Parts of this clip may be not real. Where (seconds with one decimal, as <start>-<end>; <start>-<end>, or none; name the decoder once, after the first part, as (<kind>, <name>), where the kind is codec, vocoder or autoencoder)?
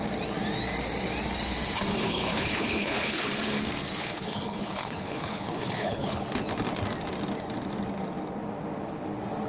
2.0-3.3 (codec, HILCodec); 4.0-6.2